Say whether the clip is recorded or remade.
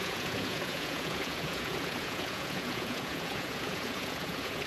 remade